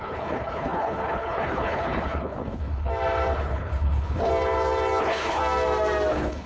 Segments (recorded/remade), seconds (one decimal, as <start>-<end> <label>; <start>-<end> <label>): 0.0-2.9 remade; 2.9-3.4 recorded; 3.4-4.3 remade; 4.3-5.0 recorded; 5.0-5.4 remade; 5.4-6.1 recorded; 6.1-6.5 remade